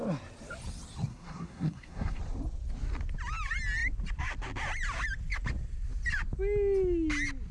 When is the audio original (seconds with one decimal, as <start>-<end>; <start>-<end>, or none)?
0.0-1.1; 2.2-7.5